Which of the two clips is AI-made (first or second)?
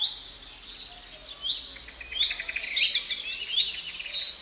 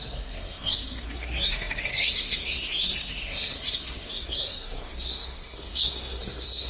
second